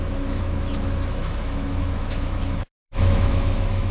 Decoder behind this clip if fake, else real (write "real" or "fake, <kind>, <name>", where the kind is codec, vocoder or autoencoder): fake, autoencoder, DAC-VAE